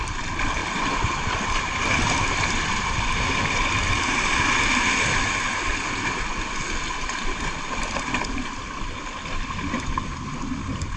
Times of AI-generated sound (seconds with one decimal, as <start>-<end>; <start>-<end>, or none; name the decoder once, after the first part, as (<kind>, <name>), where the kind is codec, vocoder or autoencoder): 0.6-1.4 (vocoder, BigVGAN v2); 6.9-7.4